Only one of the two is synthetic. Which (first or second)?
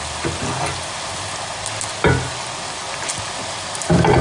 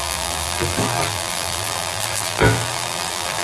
second